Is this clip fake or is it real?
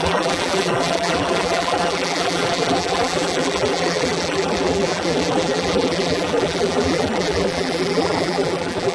fake